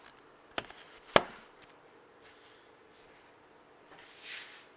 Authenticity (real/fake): real